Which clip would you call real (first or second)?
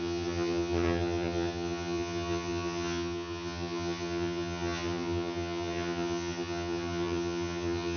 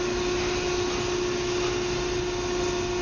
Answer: second